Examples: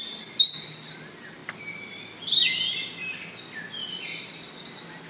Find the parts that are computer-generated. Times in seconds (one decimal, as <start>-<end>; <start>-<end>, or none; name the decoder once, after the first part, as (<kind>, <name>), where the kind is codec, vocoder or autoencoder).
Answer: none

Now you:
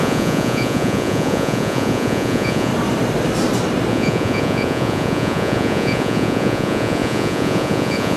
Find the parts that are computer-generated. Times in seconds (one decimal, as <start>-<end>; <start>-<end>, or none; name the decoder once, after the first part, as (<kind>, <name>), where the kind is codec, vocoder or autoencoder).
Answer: 0.0-2.7 (vocoder, Vocos); 3.9-8.2

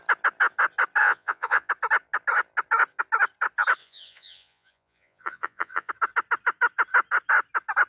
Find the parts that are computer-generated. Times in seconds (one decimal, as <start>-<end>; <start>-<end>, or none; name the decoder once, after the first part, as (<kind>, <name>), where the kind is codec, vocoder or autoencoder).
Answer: 1.0-1.7 (vocoder, Vocos); 3.8-5.9

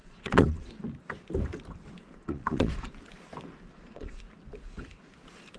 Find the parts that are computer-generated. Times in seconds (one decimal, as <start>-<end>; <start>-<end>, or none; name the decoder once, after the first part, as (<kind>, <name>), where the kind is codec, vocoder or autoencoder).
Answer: 0.0-0.7 (vocoder, Vocos); 2.2-2.9; 3.7-4.2

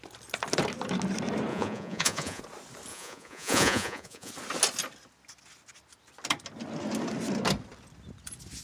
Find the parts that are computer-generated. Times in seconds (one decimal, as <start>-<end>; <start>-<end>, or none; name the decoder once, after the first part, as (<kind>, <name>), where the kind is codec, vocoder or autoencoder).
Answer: 1.5-2.4 (vocoder, Vocos); 2.9-4.3